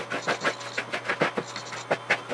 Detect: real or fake real